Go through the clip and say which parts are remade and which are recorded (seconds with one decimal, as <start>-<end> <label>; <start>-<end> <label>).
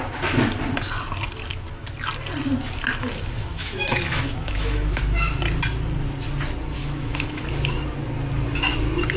0.0-3.5 recorded; 3.5-5.0 remade; 5.0-6.8 recorded; 6.8-7.4 remade; 7.4-9.2 recorded